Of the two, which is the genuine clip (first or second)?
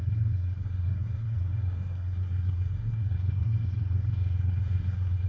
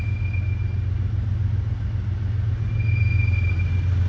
second